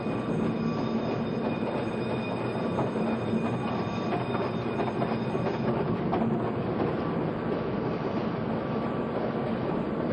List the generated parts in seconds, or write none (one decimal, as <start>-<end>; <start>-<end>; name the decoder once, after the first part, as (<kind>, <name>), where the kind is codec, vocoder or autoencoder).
none